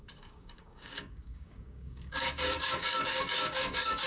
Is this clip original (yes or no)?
no